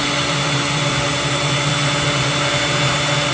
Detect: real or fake real